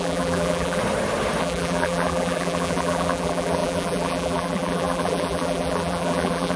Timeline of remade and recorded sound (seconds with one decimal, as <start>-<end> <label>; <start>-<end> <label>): 0.0-0.8 remade; 0.8-1.4 recorded; 1.4-6.6 remade